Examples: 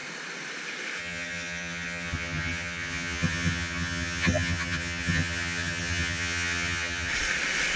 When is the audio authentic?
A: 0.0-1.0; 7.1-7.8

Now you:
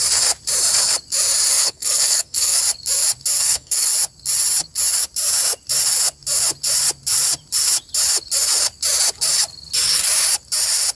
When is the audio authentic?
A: 0.0-1.5; 2.6-3.4; 3.9-10.9

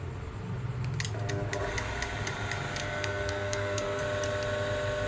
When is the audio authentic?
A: 0.0-2.8; 4.0-5.1

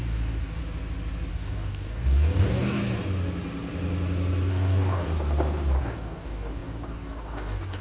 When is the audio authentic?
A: 0.6-1.3; 2.8-4.5; 5.1-5.8

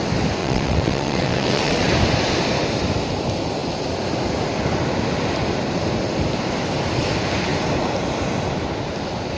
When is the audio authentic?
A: 0.0-0.4; 1.9-9.4